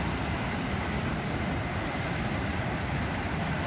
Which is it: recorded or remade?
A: recorded